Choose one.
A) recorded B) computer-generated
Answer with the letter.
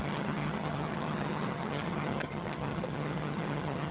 B